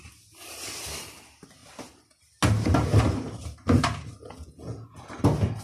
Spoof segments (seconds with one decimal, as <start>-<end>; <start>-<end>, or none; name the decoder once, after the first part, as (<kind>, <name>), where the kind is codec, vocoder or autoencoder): 4.2-5.1 (vocoder, Vocos)

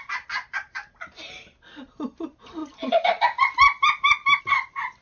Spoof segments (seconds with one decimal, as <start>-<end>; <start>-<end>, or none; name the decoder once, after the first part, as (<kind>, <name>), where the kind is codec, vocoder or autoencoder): none